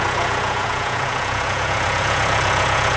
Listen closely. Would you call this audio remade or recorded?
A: remade